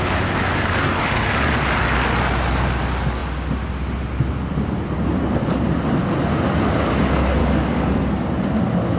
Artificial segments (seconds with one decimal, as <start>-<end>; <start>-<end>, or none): 7.4-8.3